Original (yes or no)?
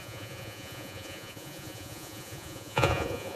no